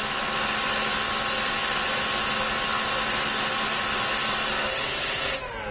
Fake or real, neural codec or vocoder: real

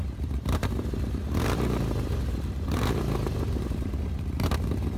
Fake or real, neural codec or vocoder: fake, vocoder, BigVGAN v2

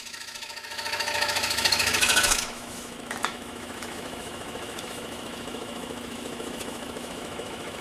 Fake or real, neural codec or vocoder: fake, autoencoder, DAC-VAE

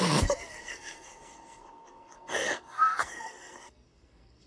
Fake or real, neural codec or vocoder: fake, codec, SNAC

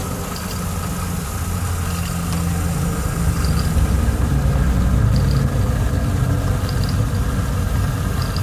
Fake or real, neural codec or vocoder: real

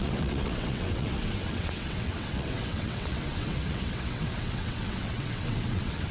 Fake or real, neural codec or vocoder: fake, vocoder, WaveNeXt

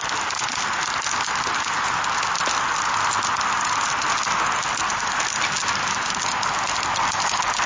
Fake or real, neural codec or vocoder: real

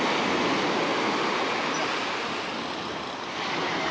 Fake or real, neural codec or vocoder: real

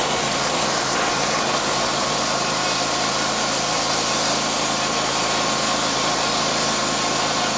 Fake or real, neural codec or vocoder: real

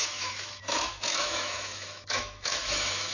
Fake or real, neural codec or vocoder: fake, autoencoder, DAC-VAE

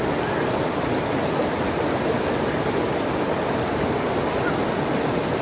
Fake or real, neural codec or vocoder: real